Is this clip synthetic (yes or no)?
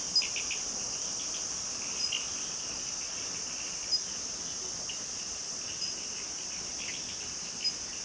no